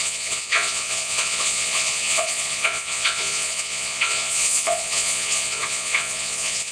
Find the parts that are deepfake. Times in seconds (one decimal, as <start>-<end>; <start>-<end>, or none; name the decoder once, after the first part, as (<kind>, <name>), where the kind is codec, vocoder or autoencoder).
0.0-6.7 (vocoder, Vocos)